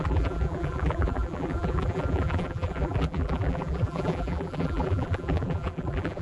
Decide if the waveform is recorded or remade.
remade